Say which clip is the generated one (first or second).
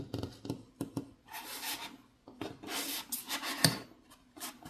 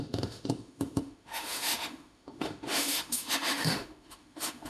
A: second